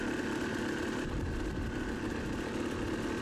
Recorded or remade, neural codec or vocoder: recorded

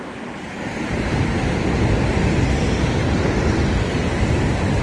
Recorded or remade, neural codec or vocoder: recorded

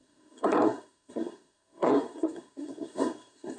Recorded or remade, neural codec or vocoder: remade, codec, SNAC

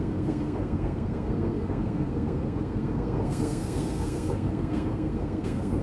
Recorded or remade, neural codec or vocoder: remade, codec, SNAC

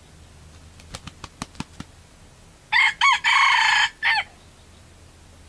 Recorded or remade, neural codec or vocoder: recorded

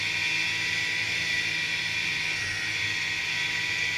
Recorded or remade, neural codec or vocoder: recorded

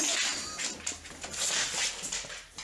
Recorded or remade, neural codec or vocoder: recorded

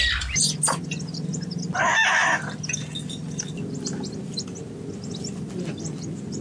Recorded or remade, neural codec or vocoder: recorded